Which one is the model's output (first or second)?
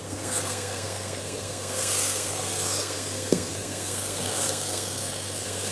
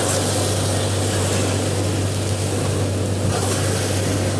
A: first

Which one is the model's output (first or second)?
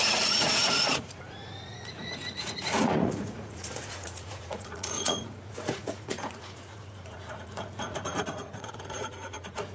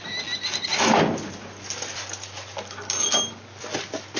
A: first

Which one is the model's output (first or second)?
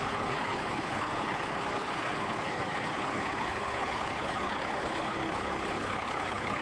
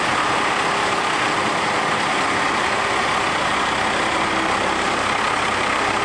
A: first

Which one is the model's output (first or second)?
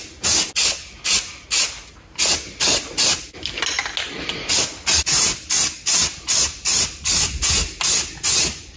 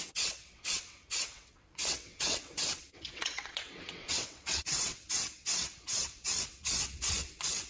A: second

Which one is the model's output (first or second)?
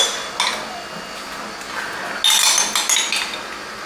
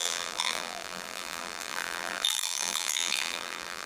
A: second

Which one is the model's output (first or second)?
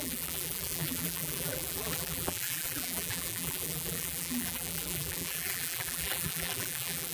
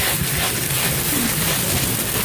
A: first